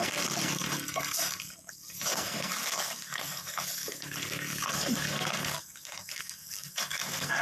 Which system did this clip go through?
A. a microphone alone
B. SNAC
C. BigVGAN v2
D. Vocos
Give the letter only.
B